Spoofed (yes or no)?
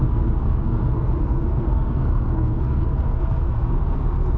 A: yes